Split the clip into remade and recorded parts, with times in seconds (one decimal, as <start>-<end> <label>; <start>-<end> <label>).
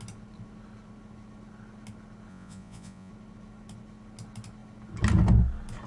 0.0-2.3 recorded; 2.3-3.1 remade; 3.1-5.9 recorded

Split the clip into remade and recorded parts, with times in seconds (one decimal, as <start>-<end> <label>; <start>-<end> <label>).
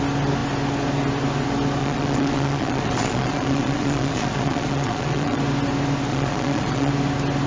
0.0-1.8 recorded; 1.8-5.4 remade; 5.4-6.1 recorded; 6.1-6.9 remade; 6.9-7.5 recorded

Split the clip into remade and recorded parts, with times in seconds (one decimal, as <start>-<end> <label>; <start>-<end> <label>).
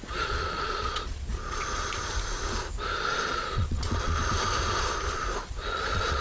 0.0-1.9 remade; 1.9-3.3 recorded; 3.3-4.2 remade; 4.2-5.5 recorded; 5.5-6.2 remade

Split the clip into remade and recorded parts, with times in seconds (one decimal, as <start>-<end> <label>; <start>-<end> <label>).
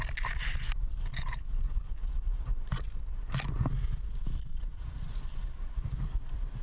0.0-4.5 recorded; 4.5-5.1 remade; 5.1-6.6 recorded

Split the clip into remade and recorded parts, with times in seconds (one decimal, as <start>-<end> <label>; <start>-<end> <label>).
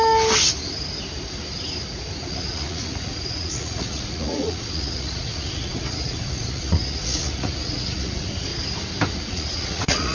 0.0-2.3 recorded; 2.3-8.5 remade; 8.5-9.3 recorded; 9.3-10.1 remade